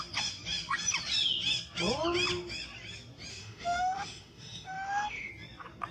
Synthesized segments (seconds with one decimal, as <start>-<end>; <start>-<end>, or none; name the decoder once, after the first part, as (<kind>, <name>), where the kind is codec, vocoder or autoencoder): 3.3-5.3 (autoencoder, DAC-VAE)